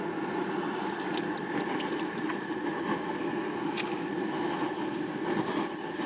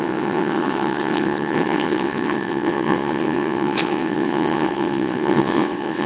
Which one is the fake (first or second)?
second